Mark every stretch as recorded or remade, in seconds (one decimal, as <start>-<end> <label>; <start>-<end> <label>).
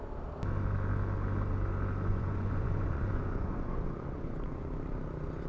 0.0-2.1 recorded; 2.1-4.7 remade; 4.7-5.5 recorded